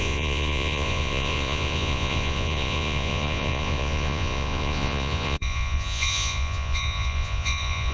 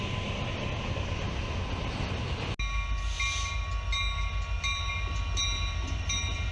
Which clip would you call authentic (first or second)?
second